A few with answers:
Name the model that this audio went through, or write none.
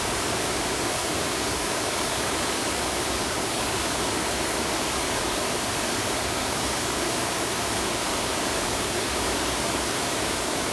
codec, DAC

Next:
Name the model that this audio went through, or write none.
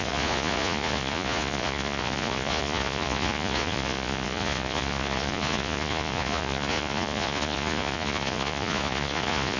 vocoder, Vocos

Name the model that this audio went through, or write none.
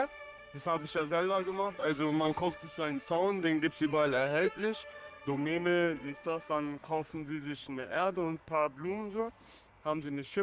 codec, SNAC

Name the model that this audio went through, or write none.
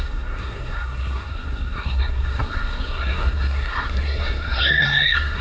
codec, SNAC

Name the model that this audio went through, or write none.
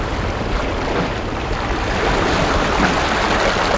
none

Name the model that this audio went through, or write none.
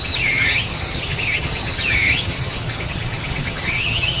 vocoder, HiFi-GAN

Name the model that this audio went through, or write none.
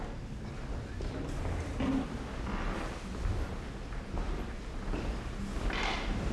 none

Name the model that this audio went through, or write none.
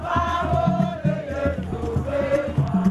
none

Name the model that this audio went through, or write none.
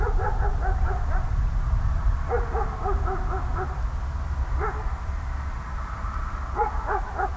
none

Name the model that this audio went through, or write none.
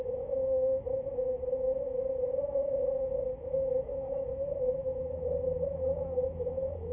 autoencoder, DAC-VAE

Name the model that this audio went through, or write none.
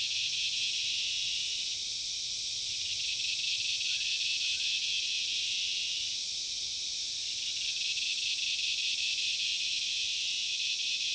none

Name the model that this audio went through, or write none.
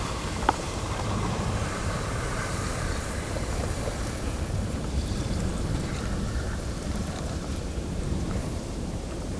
vocoder, BigVGAN v2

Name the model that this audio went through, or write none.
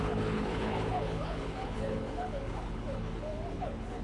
codec, HILCodec